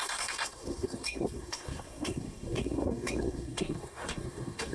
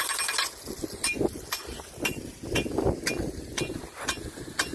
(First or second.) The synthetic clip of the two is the first